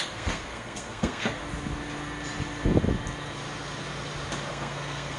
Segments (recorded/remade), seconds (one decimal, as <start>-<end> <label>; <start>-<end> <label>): 0.0-1.4 remade; 1.4-4.5 recorded; 4.5-5.2 remade